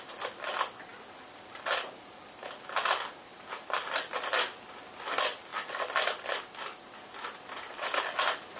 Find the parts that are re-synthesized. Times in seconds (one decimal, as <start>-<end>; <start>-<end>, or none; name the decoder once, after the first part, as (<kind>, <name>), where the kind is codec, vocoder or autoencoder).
none